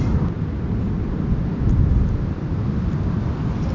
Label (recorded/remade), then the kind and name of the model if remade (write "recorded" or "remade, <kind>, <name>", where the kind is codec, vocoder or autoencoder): recorded